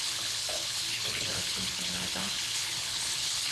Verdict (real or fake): fake